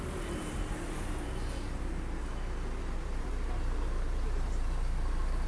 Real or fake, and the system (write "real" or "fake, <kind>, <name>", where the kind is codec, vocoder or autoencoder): fake, vocoder, BigVGAN v2